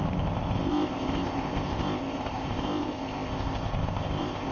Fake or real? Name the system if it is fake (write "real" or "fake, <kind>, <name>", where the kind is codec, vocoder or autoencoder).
fake, codec, ZipCodec